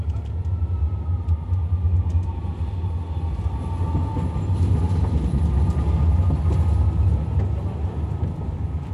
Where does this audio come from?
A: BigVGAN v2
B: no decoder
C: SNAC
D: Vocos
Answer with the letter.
B